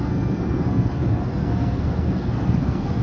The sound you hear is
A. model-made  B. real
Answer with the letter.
A